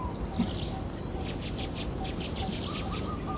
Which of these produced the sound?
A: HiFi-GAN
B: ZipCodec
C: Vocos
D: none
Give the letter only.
D